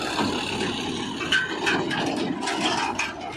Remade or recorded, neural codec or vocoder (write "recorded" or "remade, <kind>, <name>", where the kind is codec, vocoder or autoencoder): recorded